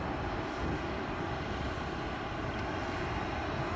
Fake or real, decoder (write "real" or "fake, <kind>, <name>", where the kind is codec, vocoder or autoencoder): real